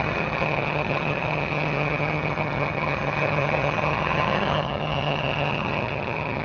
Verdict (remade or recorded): remade